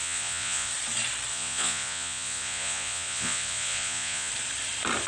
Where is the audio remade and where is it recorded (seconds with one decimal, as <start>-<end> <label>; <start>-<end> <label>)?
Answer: 0.0-0.7 remade; 0.7-1.3 recorded; 1.3-4.3 remade; 4.3-5.1 recorded